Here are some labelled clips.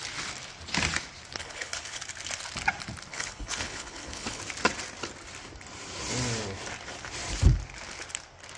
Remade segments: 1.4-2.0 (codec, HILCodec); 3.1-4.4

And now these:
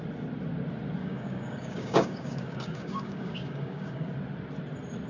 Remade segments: 1.0-4.1 (codec, DAC)

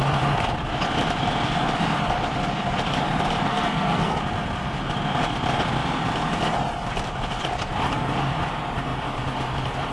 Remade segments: 3.5-4.2 (codec, SNAC)

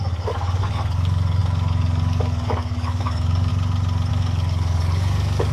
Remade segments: 0.0-3.5 (codec, DAC); 4.1-5.5

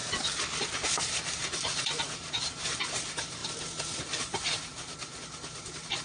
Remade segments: 0.7-3.4 (vocoder, BigVGAN v2); 4.0-6.0